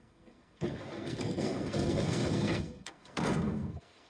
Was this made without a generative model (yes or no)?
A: no